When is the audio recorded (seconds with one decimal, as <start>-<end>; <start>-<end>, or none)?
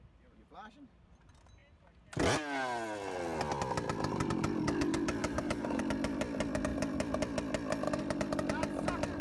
0.0-5.2; 5.8-9.2